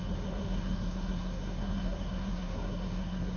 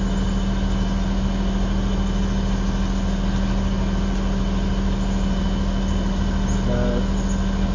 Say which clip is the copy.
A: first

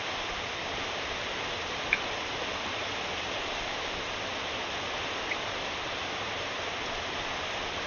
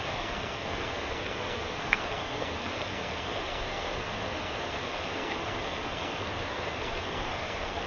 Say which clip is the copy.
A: second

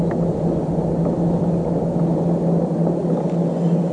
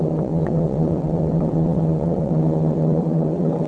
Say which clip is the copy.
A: second